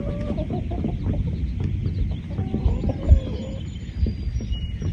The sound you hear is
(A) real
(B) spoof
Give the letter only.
A